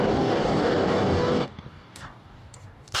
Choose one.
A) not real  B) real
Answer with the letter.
A